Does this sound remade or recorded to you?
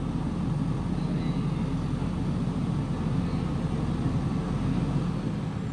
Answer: recorded